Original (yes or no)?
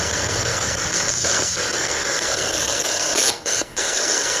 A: no